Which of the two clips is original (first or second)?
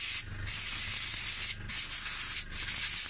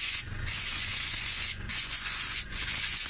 first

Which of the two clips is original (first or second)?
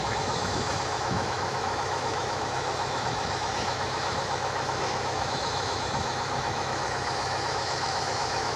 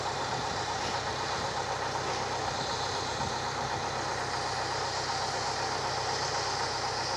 second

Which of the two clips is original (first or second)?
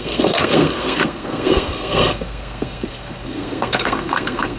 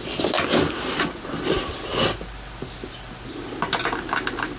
second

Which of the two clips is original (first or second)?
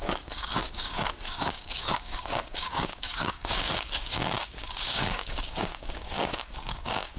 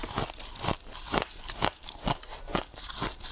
second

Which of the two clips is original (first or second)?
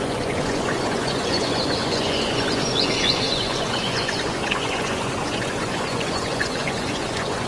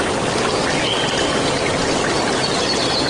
second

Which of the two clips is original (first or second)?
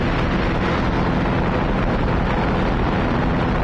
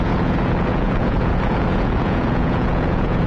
first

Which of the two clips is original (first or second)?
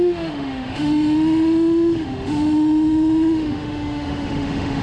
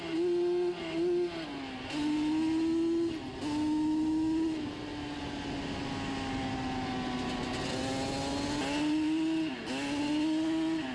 second